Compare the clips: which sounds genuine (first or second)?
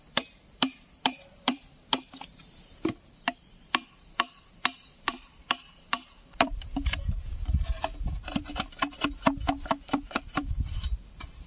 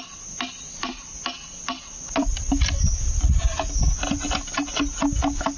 second